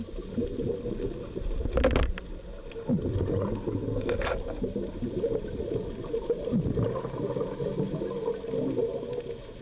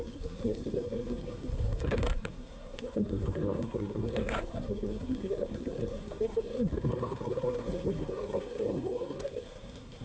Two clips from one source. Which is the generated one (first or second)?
second